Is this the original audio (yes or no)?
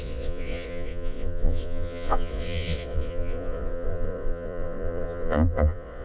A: no